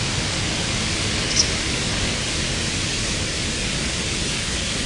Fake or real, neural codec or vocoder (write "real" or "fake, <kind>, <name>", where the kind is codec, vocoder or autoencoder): fake, codec, DAC